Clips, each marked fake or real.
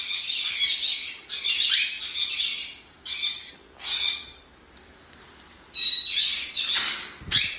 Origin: real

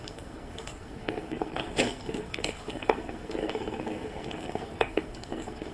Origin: fake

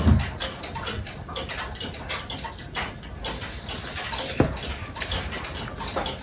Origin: real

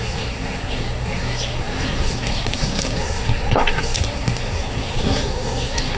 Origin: fake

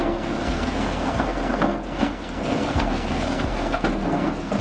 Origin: fake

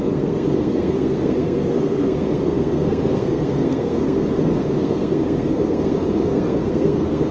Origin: fake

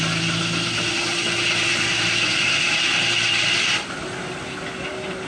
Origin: real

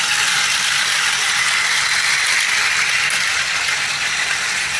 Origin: real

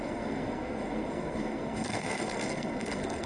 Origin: fake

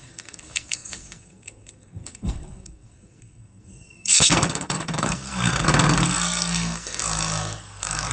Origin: fake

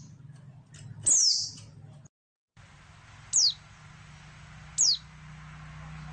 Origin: real